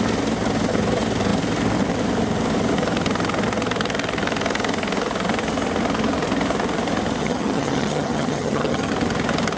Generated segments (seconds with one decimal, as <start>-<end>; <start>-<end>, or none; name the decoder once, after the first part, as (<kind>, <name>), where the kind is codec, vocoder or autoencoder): 7.2-8.9 (vocoder, HiFi-GAN)